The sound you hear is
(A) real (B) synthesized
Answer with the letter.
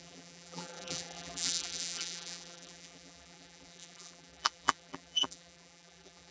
B